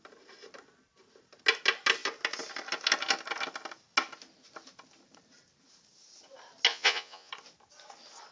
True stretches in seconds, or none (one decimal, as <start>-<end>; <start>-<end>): 0.0-6.7; 7.3-8.3